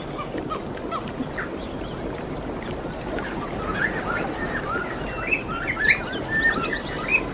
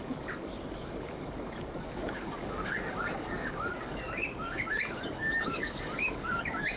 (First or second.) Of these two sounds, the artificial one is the second